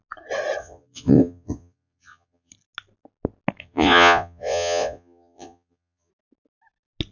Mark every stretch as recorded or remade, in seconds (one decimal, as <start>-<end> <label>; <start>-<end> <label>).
0.0-0.6 recorded; 0.6-2.5 remade; 2.5-3.6 recorded; 3.6-6.1 remade; 6.1-7.1 recorded